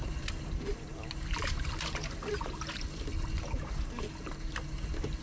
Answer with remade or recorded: recorded